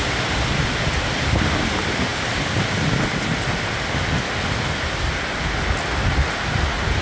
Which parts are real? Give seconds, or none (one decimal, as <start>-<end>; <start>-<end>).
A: 0.0-7.0